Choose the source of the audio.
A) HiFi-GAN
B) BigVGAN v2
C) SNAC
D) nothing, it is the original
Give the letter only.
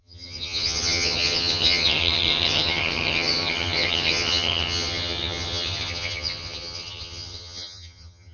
A